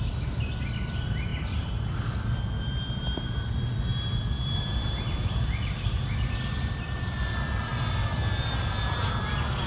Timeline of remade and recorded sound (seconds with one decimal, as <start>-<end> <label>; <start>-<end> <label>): 0.0-7.7 remade; 7.7-9.7 recorded